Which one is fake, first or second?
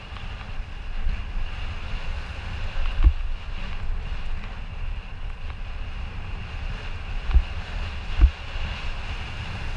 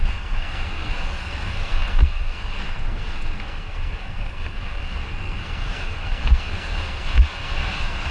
second